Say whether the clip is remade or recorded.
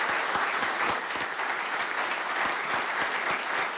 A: recorded